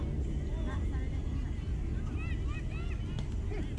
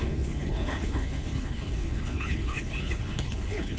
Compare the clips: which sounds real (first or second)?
first